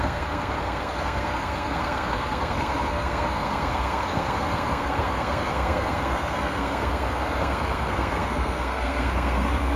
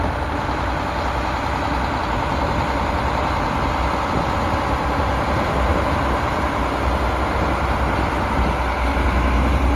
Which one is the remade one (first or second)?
first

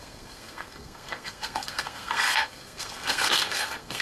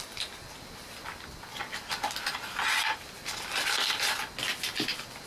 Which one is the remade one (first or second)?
first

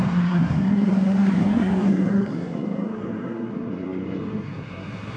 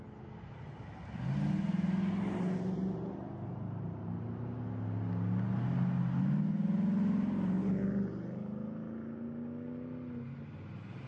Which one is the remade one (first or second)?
first